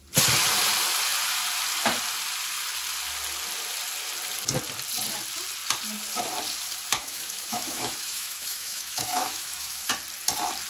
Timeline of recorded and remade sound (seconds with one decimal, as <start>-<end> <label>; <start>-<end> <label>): 0.0-6.9 recorded; 6.9-9.9 remade; 9.9-10.7 recorded